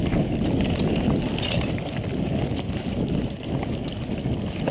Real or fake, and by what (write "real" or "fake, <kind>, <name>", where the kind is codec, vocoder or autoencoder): real